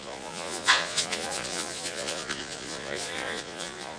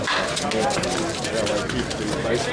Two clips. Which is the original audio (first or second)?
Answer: second